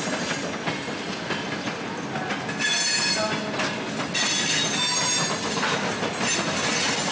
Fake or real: real